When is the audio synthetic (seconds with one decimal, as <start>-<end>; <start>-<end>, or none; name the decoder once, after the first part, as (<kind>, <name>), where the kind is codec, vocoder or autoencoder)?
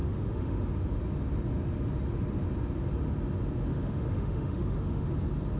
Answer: 0.0-0.6 (autoencoder, DAC-VAE); 3.7-5.1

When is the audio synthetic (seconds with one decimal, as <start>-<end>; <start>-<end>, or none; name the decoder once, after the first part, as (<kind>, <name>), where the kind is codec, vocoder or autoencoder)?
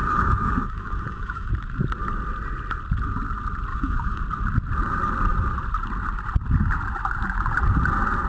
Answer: 0.0-1.5 (autoencoder, DAC-VAE); 3.7-4.2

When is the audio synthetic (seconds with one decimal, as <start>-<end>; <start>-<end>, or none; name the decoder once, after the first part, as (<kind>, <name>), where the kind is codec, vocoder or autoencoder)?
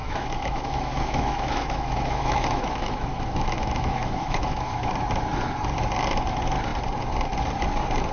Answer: 0.0-4.9 (autoencoder, DAC-VAE)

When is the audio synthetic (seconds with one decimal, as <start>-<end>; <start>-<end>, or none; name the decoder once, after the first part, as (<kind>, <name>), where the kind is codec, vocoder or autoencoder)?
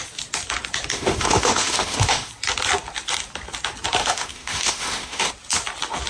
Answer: 0.9-2.3 (autoencoder, DAC-VAE); 4.0-5.3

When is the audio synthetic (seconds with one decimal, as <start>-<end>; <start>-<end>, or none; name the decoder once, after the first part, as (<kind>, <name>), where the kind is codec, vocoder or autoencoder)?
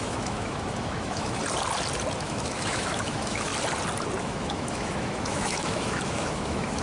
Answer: 0.0-1.4 (autoencoder, DAC-VAE); 2.2-3.5; 4.2-6.8